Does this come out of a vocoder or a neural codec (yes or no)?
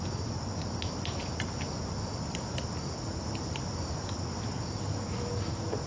no